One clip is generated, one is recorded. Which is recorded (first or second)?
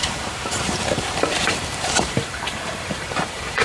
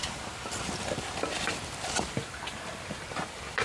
second